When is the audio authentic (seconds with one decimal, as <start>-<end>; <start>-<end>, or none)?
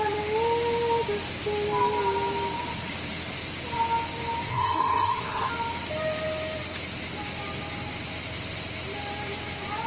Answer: 0.0-4.5; 5.5-9.9